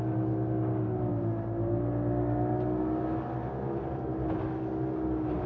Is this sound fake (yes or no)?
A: no